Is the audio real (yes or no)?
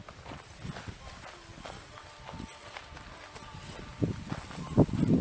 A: yes